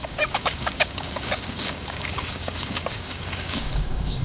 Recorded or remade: remade